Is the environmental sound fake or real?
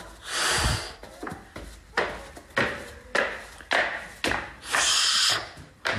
real